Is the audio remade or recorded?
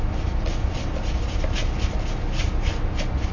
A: recorded